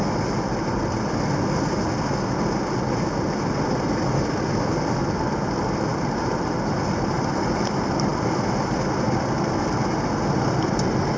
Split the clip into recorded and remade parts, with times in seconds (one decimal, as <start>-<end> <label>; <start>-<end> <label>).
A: 0.0-5.9 recorded; 5.9-6.5 remade; 6.5-11.2 recorded